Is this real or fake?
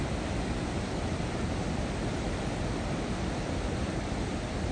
real